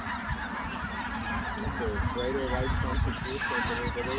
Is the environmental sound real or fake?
real